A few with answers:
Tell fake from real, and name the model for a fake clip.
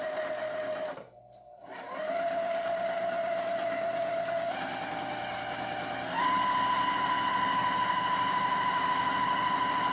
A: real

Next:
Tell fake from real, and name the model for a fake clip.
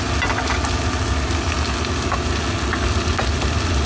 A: real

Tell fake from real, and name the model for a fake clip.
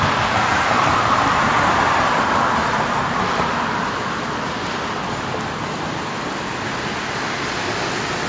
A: real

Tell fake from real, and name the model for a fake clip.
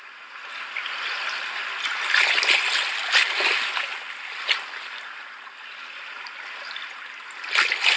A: real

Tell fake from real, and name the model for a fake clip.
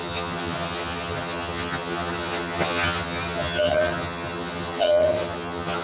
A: fake, vocoder, HiFi-GAN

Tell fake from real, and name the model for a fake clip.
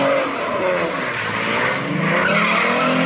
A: real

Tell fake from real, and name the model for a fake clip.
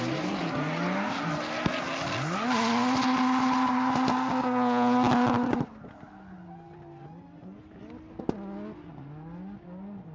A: real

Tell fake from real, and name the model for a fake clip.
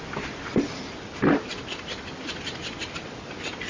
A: real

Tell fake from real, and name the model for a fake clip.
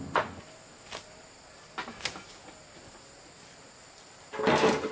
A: real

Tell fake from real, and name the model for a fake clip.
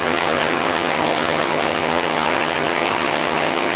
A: fake, vocoder, HiFi-GAN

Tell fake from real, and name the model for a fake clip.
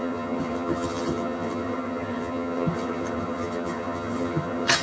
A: fake, vocoder, HiFi-GAN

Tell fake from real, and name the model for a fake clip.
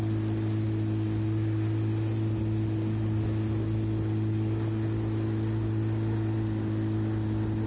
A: real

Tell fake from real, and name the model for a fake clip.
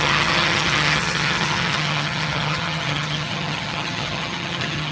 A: fake, vocoder, HiFi-GAN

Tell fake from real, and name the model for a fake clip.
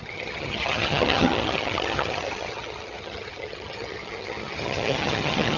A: fake, vocoder, HiFi-GAN